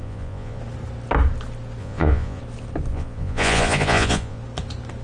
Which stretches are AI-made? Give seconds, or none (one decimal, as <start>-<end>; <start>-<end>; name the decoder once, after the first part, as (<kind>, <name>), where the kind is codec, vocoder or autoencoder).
0.0-0.6 (vocoder, Vocos); 1.8-2.4; 2.9-4.4